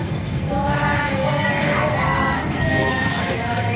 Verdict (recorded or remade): remade